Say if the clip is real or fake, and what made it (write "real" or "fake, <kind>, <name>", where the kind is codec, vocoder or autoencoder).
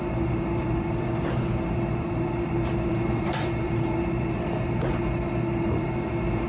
fake, vocoder, BigVGAN v2